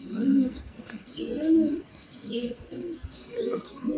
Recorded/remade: remade